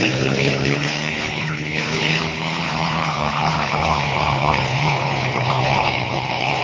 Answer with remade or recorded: remade